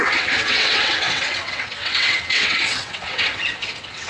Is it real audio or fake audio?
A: fake